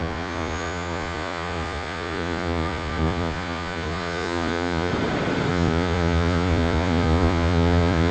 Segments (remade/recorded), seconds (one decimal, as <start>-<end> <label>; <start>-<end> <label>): 0.0-4.9 remade; 4.9-5.5 recorded; 5.5-8.1 remade